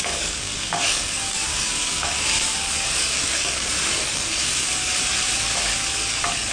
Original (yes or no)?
no